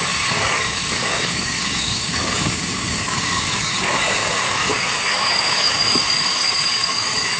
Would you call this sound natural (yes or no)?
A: no